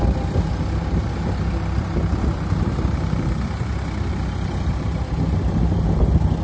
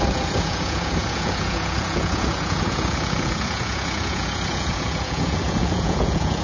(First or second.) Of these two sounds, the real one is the first